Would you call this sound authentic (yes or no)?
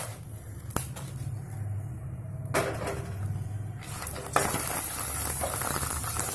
yes